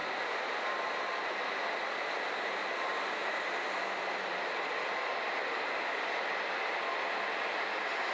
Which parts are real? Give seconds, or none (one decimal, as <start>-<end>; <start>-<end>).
0.0-8.1